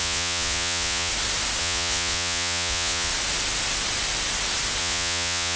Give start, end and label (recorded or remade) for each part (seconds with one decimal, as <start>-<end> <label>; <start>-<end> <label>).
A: 0.0-1.1 remade; 1.1-1.6 recorded; 1.6-3.1 remade; 3.1-4.8 recorded; 4.8-5.6 remade